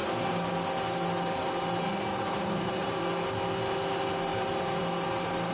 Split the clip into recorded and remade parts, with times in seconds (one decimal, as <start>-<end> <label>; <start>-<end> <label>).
0.0-0.5 remade; 0.5-2.1 recorded; 2.1-3.0 remade; 3.0-4.3 recorded; 4.3-4.8 remade; 4.8-5.5 recorded